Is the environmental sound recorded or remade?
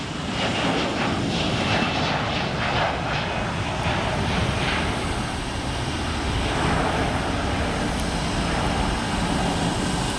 recorded